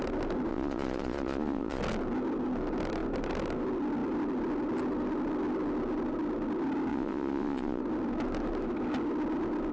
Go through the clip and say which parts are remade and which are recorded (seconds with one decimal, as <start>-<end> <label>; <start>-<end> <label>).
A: 0.0-0.5 recorded; 0.5-1.8 remade; 1.8-6.9 recorded; 6.9-7.8 remade; 7.8-9.7 recorded